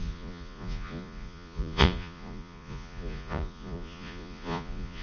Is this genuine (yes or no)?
no